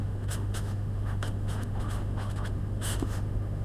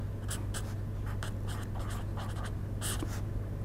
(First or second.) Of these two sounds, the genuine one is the second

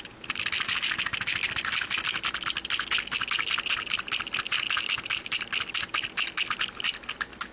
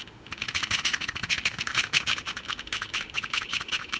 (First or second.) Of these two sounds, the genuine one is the first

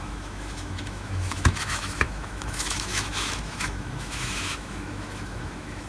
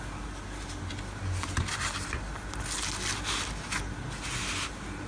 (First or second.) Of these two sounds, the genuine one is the second